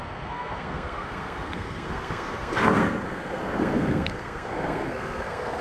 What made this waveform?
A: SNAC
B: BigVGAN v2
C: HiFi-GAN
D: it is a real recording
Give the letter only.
A